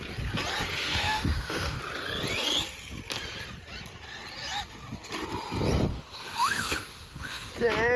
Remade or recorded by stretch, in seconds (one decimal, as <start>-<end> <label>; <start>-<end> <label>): 0.0-0.7 recorded; 0.7-1.8 remade; 1.8-5.9 recorded; 5.9-7.5 remade; 7.5-8.0 recorded